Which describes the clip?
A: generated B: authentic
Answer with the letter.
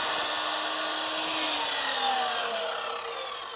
B